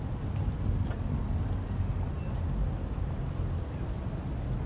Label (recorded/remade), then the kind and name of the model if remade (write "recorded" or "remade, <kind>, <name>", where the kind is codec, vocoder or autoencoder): recorded